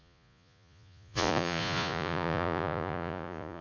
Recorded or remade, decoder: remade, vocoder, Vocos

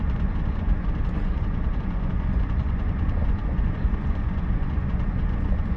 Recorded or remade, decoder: remade, vocoder, Vocos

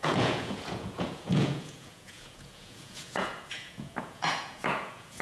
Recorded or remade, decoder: remade, vocoder, Vocos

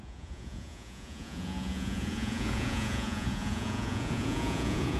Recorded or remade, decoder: remade, vocoder, Vocos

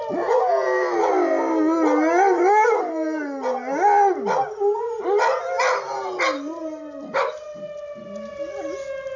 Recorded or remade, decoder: recorded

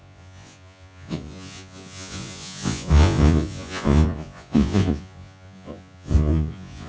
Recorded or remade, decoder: remade, vocoder, Vocos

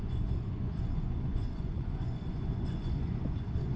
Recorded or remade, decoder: remade, vocoder, Vocos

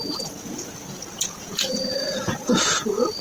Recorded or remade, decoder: remade, vocoder, Vocos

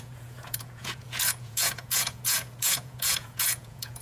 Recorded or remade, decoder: remade, vocoder, Vocos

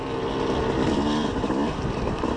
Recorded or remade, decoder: recorded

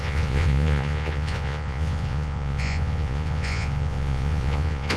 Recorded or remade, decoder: remade, vocoder, Vocos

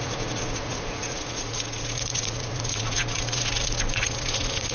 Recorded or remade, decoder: remade, vocoder, Vocos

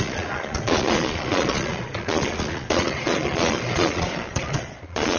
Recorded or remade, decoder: remade, vocoder, Vocos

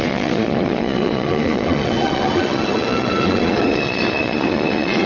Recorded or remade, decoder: remade, vocoder, Vocos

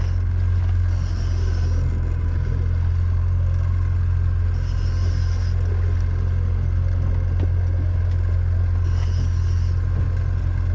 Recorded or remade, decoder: recorded